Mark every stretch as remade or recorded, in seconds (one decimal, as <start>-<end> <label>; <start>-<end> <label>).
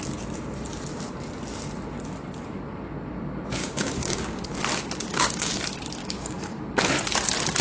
0.0-3.6 recorded; 3.6-4.4 remade; 4.4-5.1 recorded; 5.1-5.6 remade; 5.6-6.0 recorded; 6.0-6.6 remade; 6.6-7.6 recorded